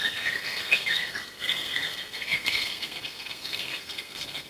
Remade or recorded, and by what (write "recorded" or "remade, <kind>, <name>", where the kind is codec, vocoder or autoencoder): remade, codec, SNAC